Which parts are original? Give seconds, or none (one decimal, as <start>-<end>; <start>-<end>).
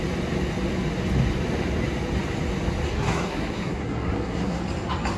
0.0-2.9; 4.6-5.2